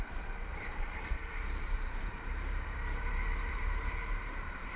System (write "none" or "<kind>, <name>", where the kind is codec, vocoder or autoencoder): vocoder, BigVGAN v2